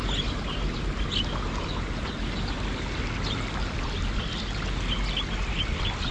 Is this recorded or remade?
recorded